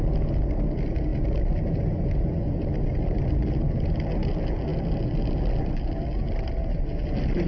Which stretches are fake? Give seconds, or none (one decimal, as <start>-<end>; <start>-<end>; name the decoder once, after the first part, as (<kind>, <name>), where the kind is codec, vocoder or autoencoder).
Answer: none